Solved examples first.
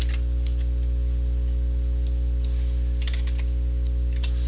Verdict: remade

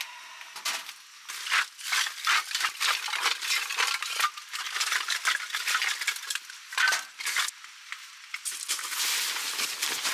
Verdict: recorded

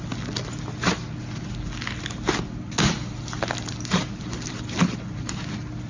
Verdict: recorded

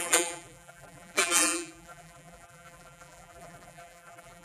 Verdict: remade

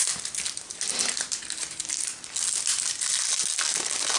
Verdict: recorded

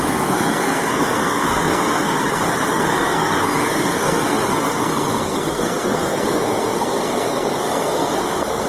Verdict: remade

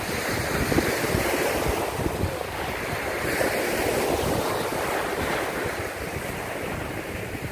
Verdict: recorded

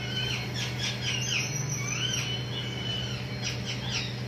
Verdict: recorded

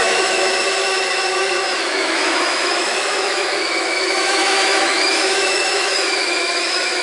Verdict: remade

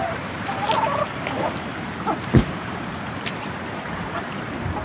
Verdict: remade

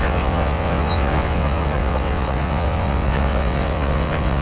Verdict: remade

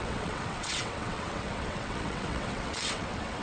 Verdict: remade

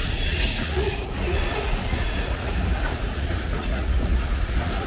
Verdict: remade